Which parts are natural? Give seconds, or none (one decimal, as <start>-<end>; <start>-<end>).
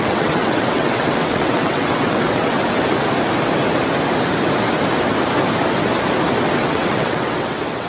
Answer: 2.6-6.6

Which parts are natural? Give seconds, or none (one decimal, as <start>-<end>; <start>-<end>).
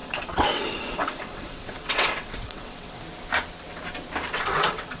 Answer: 3.0-4.3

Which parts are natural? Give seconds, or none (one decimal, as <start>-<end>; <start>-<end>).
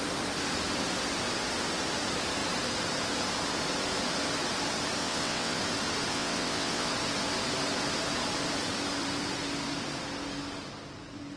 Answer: 0.0-5.0; 5.6-6.1; 6.9-11.4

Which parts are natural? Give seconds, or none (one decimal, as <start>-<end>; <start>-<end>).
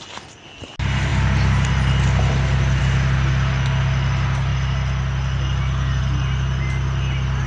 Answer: 0.0-7.5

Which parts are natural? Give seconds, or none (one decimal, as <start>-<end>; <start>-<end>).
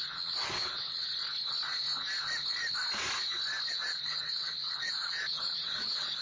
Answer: 1.1-3.7